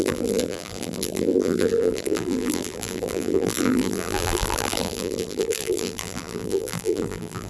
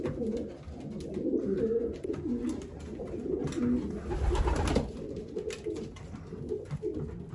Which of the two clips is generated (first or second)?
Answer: first